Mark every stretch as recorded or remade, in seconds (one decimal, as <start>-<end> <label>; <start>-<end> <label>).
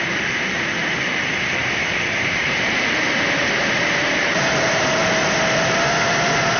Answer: 0.0-1.6 recorded; 1.6-4.5 remade; 4.5-6.6 recorded